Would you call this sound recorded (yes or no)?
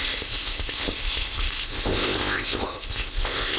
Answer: no